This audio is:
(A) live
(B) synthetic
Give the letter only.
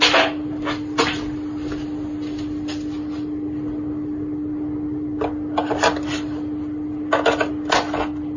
A